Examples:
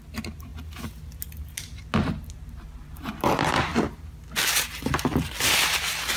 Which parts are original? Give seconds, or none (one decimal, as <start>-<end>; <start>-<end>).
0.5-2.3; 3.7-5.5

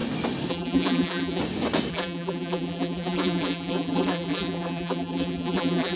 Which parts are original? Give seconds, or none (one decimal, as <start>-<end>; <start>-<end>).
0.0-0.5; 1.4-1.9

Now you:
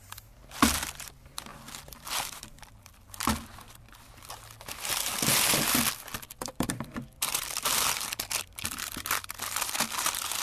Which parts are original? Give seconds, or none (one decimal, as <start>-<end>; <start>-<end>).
0.0-1.5; 4.3-6.1; 9.7-10.4